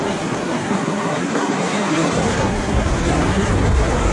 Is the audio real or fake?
fake